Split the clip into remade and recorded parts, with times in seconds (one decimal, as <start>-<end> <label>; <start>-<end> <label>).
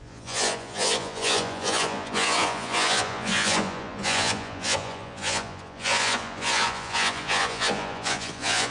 0.0-8.7 remade